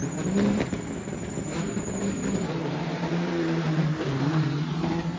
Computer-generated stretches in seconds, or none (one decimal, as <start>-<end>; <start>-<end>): 2.6-5.2